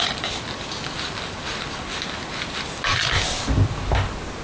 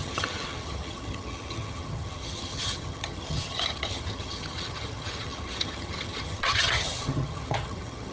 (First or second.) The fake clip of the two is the second